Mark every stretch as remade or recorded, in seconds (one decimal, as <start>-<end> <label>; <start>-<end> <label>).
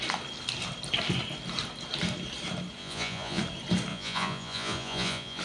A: 0.0-2.8 recorded; 2.8-3.4 remade; 3.4-3.9 recorded; 3.9-5.4 remade